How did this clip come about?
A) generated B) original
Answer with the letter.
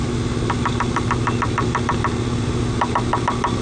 B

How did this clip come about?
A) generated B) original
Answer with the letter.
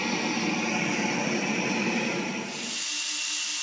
B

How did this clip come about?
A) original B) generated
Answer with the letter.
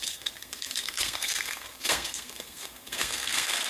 B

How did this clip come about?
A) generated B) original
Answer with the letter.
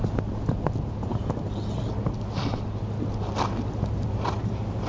B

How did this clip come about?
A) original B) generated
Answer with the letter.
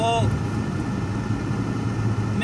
A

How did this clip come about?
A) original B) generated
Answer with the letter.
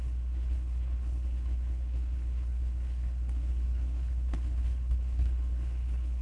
B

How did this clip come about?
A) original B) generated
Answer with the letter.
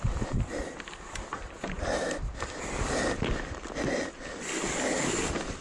A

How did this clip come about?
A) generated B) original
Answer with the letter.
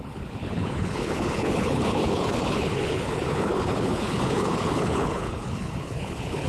A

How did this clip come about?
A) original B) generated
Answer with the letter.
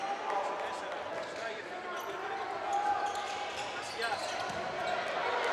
A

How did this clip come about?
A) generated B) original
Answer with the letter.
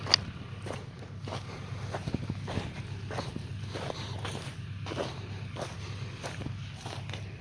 B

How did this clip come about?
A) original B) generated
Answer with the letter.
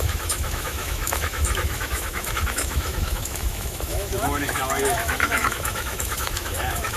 B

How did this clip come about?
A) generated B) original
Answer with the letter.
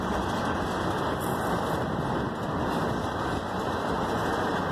B